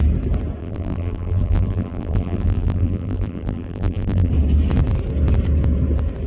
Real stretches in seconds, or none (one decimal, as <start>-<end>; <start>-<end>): 0.0-0.6; 4.3-6.3